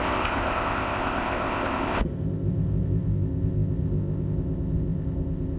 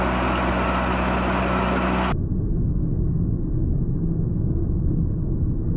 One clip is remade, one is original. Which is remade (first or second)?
first